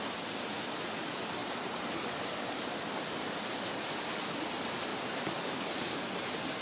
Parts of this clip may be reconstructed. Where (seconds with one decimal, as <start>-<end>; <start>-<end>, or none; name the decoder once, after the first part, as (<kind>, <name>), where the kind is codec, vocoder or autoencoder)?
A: none